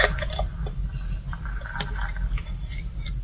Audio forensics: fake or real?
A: real